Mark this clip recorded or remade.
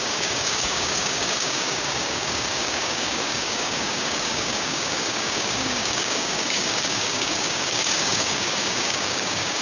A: remade